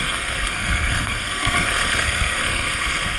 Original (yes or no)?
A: no